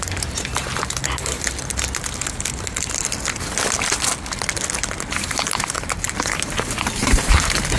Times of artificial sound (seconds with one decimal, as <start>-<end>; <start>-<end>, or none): 0.0-1.0; 5.1-7.8